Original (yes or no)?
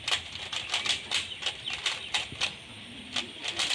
yes